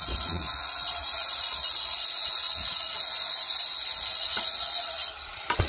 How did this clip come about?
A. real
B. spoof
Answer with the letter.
B